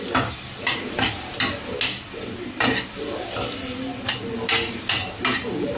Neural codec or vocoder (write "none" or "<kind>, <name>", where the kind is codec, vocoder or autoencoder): none